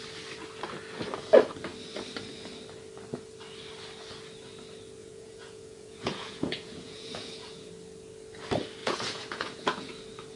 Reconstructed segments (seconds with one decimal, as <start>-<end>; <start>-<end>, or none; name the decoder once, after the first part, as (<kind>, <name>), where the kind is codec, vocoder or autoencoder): 5.0-7.7 (vocoder, Vocos); 8.8-9.9